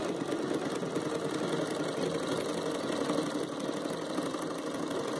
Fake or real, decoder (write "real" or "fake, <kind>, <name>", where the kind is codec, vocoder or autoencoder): real